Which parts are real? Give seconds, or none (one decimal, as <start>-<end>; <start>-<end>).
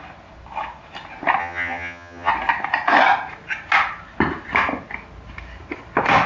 0.0-1.4; 2.3-6.3